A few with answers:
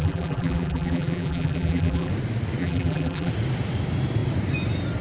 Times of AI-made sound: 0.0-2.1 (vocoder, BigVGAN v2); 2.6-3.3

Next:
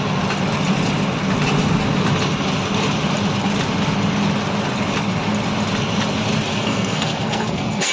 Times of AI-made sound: 6.5-7.9 (codec, SNAC)

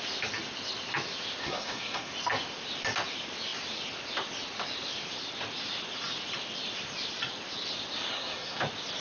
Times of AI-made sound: 1.4-2.1 (codec, SNAC); 8.1-8.6